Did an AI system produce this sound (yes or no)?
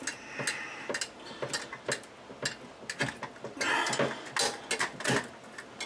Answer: no